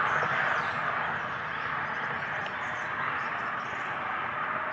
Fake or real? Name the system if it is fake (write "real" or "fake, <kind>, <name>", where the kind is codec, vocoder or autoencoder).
real